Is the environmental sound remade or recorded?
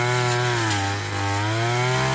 recorded